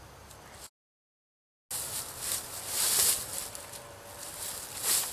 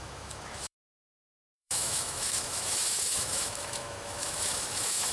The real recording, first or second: first